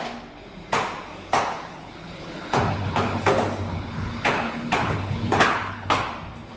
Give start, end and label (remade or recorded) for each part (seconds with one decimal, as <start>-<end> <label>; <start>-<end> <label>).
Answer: 0.0-1.5 recorded; 1.5-3.3 remade; 3.3-3.7 recorded; 3.7-6.0 remade; 6.0-6.6 recorded